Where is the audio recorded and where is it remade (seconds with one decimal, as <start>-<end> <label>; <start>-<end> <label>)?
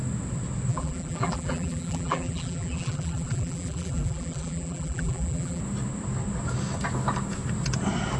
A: 0.0-0.7 recorded; 0.7-5.6 remade; 5.6-8.2 recorded